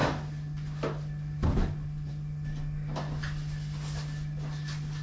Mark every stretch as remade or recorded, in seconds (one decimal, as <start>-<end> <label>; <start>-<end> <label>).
0.0-5.0 recorded